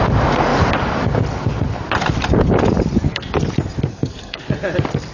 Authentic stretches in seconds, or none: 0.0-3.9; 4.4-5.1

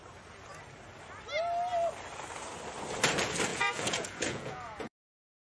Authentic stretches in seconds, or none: 0.0-3.5

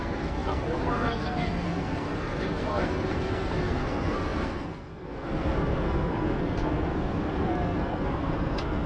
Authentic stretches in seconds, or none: none

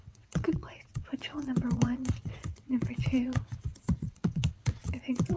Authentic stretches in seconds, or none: none